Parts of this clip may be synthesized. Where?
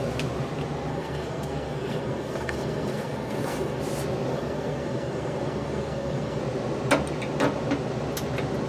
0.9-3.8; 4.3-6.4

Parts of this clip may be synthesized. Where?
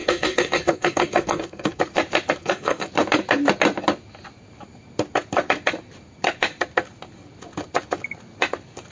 0.0-1.8; 2.4-2.9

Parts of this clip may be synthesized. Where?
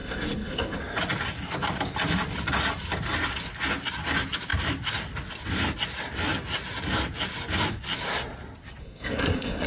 0.0-0.8; 8.8-9.7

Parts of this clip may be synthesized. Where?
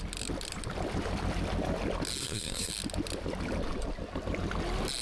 2.2-2.7